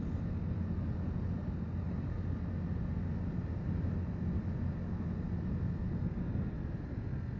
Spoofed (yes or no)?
no